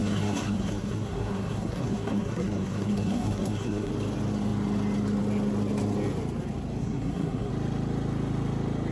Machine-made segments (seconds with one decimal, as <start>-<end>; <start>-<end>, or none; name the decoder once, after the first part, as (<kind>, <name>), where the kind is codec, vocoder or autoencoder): 0.0-3.9 (codec, SNAC); 6.8-7.5